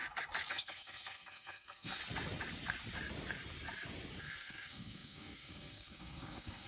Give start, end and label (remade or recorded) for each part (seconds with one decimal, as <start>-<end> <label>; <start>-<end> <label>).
0.0-0.5 recorded; 0.5-2.0 remade; 2.0-4.2 recorded; 4.2-6.7 remade